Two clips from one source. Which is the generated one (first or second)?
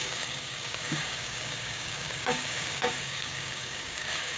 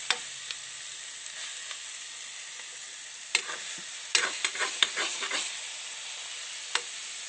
first